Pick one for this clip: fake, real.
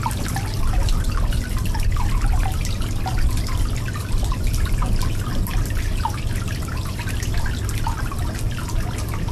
real